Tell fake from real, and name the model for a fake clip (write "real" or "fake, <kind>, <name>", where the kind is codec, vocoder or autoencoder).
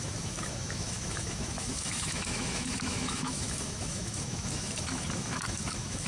fake, autoencoder, DAC-VAE